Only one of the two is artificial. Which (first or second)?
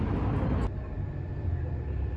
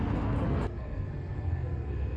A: second